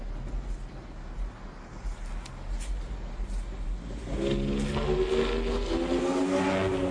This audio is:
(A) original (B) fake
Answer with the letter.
A